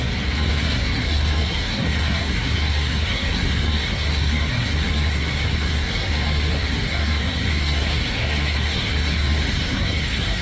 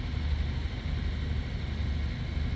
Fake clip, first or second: first